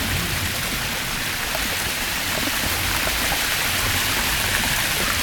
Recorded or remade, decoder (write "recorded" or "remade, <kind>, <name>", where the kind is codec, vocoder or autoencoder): recorded